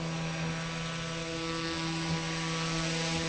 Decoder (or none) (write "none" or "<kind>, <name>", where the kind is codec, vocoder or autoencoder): none